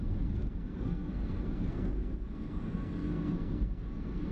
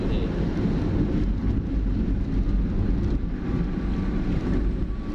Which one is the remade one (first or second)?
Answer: first